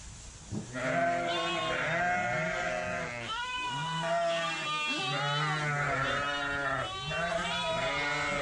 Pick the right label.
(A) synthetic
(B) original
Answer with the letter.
B